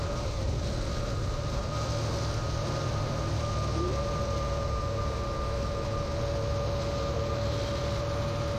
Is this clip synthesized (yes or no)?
no